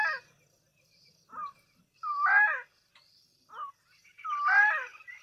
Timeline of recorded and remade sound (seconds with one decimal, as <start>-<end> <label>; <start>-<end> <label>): 0.0-0.7 recorded; 0.7-3.7 remade; 3.7-5.2 recorded